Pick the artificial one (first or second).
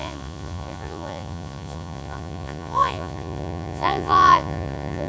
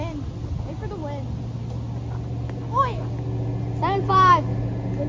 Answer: first